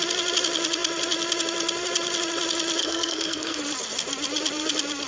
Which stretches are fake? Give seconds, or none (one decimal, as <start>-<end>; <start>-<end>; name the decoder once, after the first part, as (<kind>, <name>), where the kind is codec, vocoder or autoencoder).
2.8-3.6 (codec, SNAC)